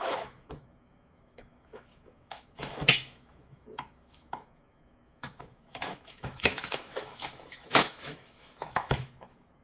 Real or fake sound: fake